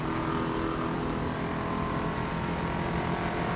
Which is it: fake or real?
real